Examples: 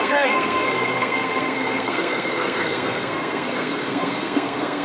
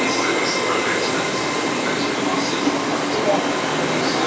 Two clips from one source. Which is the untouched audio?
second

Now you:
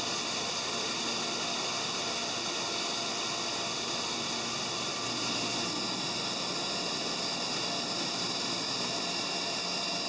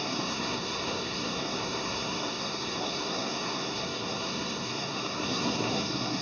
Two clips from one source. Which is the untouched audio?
first